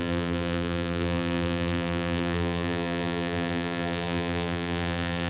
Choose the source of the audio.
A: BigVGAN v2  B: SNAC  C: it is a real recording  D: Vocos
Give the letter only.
A